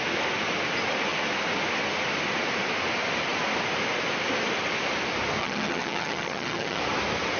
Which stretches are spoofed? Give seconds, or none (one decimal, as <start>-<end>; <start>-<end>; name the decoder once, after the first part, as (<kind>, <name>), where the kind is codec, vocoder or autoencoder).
5.4-6.8 (vocoder, HiFi-GAN)